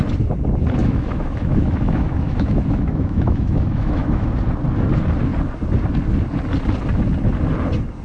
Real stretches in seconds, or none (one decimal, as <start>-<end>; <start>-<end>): 0.0-0.8; 4.3-8.0